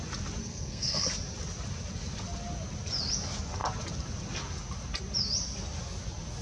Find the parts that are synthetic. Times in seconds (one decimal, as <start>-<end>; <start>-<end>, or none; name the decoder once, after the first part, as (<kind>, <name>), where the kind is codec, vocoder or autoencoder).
0.4-1.1 (codec, SNAC)